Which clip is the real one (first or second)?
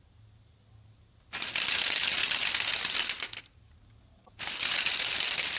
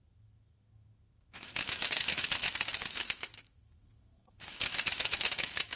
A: first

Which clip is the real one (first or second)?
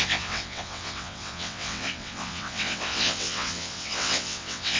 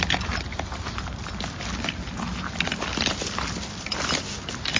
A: second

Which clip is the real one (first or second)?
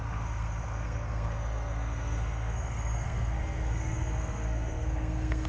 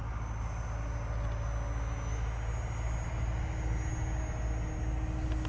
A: second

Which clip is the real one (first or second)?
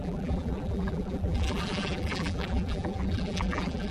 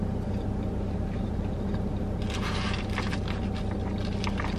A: second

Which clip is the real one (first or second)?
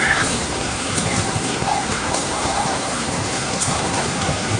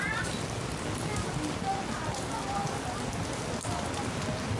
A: second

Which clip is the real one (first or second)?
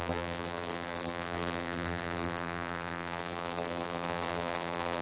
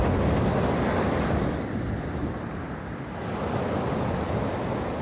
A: second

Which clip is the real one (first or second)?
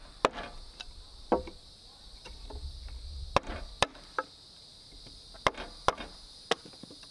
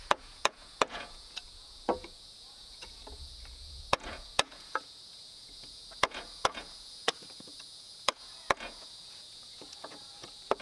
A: first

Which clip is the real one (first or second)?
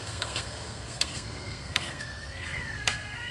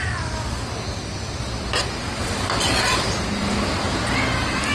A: second